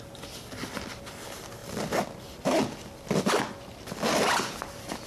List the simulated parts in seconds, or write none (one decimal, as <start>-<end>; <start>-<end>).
1.6-5.1